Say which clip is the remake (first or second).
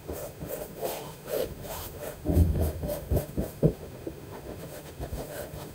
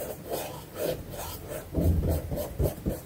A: first